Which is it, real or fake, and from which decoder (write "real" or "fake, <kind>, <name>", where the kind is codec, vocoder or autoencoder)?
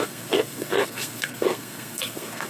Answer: fake, codec, SNAC